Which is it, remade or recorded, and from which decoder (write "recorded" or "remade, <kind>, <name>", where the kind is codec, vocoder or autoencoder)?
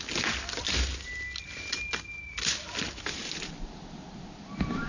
recorded